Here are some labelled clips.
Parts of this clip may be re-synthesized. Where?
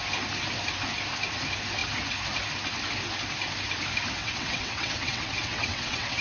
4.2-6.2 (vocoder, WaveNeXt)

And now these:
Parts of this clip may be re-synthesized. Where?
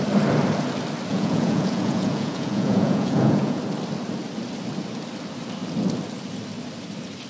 1.1-3.6 (vocoder, Vocos)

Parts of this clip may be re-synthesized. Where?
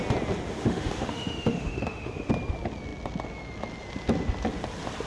0.6-2.3 (autoencoder, DAC-VAE)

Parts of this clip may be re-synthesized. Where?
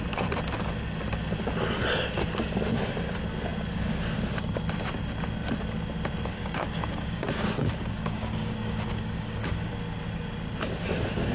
6.3-9.7 (codec, DAC)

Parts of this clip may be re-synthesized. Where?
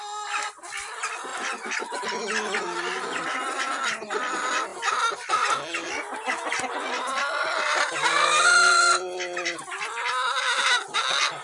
none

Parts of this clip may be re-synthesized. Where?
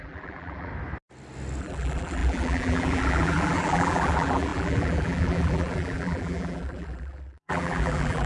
0.0-0.7 (vocoder, BigVGAN v2); 1.6-8.3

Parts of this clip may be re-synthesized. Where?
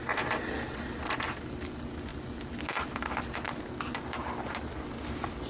2.1-2.6 (vocoder, BigVGAN v2)